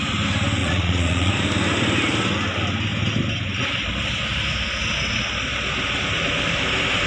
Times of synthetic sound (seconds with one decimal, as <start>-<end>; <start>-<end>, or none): 0.6-1.3